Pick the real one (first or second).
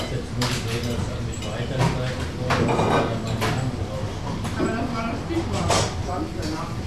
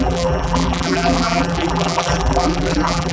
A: first